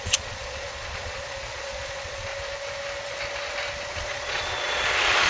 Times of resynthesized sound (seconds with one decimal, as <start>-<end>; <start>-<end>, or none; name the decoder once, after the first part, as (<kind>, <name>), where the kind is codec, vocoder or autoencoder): 0.0-2.3 (vocoder, Vocos); 3.9-5.3